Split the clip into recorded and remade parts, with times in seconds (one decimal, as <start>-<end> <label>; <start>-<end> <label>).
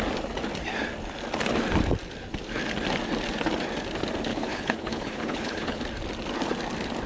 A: 0.0-4.3 recorded; 4.3-5.8 remade; 5.8-7.1 recorded